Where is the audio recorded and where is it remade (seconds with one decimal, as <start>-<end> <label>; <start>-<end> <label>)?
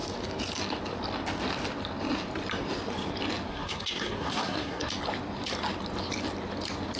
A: 0.0-3.5 recorded; 3.5-4.9 remade; 4.9-7.0 recorded